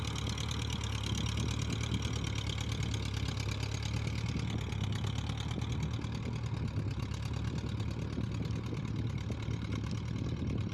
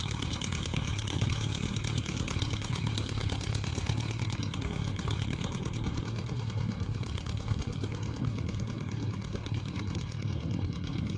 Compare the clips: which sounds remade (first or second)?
second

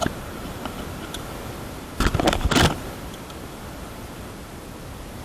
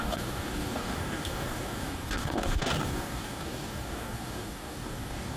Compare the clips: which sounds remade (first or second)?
second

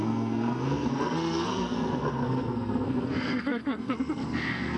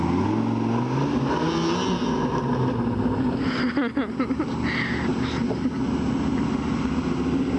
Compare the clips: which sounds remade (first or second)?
first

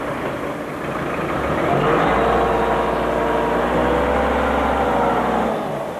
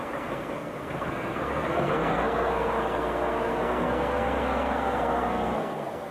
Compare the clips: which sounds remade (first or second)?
second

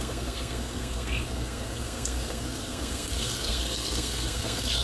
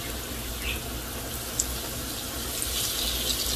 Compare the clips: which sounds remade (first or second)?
first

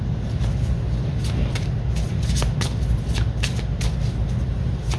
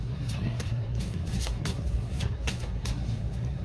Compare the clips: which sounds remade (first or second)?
second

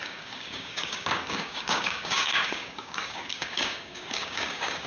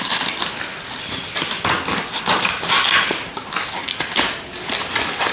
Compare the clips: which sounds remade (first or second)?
first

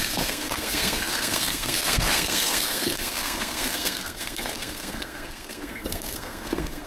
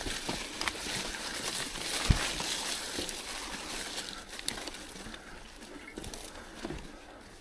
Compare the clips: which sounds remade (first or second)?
first